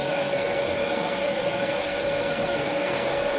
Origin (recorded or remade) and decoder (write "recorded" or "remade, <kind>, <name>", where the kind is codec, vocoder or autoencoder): remade, codec, SNAC